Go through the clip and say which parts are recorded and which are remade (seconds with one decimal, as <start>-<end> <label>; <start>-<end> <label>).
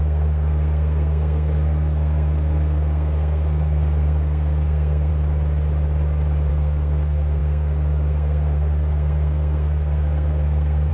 0.0-5.1 remade; 5.1-6.5 recorded; 6.5-10.9 remade